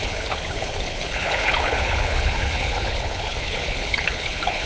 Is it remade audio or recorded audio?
remade